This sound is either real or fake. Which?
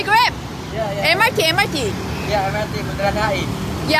real